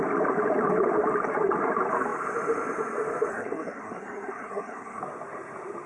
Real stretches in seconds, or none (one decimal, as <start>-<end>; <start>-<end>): 0.0-3.3; 5.0-5.9